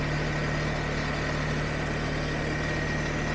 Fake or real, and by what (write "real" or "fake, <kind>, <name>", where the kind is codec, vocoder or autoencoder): real